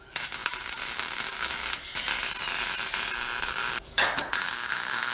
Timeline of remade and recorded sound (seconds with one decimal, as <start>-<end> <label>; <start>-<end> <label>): 0.0-2.1 remade; 2.1-3.4 recorded; 3.4-5.1 remade